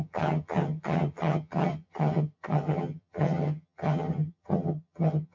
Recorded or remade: remade